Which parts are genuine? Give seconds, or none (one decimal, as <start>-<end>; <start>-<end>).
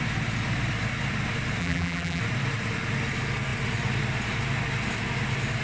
0.0-1.6; 2.2-5.6